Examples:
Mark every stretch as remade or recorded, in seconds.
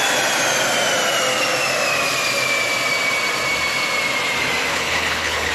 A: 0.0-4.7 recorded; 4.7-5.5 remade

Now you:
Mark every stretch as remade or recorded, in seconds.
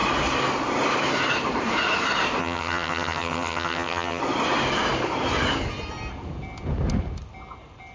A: 0.0-2.4 recorded; 2.4-4.2 remade; 4.2-7.9 recorded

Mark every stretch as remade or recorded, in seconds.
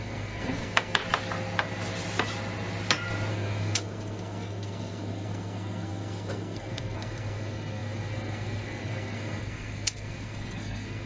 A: 0.0-1.0 remade; 1.0-3.3 recorded; 3.3-11.1 remade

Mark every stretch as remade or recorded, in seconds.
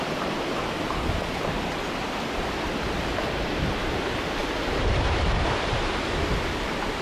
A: 0.0-7.0 recorded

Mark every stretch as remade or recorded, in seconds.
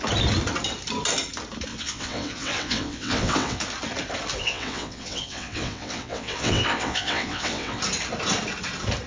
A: 0.0-1.7 recorded; 1.7-3.6 remade; 3.6-4.4 recorded; 4.4-7.8 remade; 7.8-9.1 recorded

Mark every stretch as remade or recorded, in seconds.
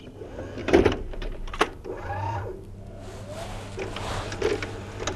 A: 0.0-0.6 recorded; 0.6-2.4 remade; 2.4-5.2 recorded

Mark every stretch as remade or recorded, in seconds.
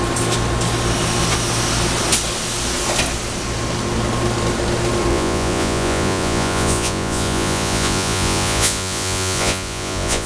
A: 0.0-5.1 recorded; 5.1-10.3 remade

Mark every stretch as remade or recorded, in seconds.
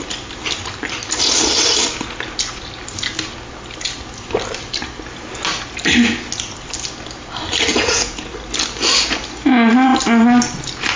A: 0.0-7.7 recorded; 7.7-8.3 remade; 8.3-11.0 recorded